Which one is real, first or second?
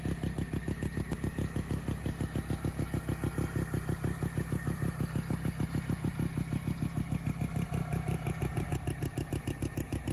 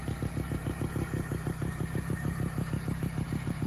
first